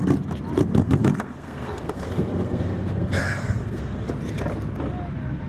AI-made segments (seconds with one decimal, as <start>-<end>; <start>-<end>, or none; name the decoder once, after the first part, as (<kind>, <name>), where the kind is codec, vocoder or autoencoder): 0.8-4.1 (codec, SNAC)